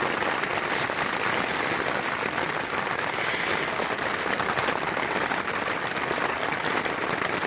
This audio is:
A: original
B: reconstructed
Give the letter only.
A